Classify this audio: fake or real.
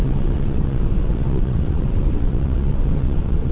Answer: fake